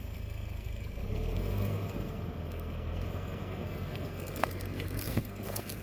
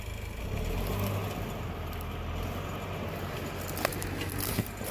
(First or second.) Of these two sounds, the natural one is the second